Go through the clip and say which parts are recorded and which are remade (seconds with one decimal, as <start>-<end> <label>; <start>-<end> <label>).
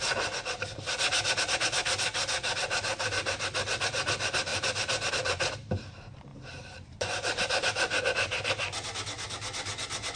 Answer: 0.0-4.5 recorded; 4.5-5.1 remade; 5.1-6.3 recorded; 6.3-8.0 remade; 8.0-10.2 recorded